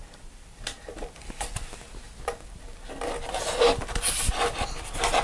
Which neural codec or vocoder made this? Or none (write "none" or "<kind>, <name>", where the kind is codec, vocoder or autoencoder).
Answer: none